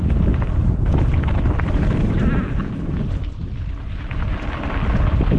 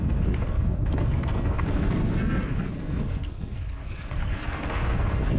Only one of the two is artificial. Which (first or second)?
second